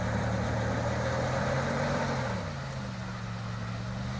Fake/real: real